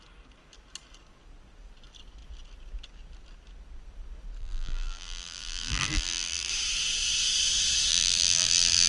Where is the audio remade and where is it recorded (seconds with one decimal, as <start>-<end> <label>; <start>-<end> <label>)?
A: 0.0-4.4 recorded; 4.4-6.5 remade; 6.5-7.9 recorded; 7.9-8.9 remade